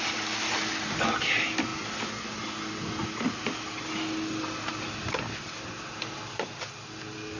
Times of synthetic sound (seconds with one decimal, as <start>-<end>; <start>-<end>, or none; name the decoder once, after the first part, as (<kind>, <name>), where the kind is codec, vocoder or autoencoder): none